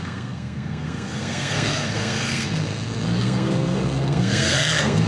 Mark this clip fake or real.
fake